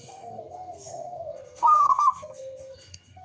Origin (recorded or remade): remade